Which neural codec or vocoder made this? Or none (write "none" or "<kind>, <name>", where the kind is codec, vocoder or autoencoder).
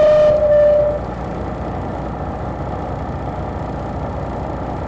none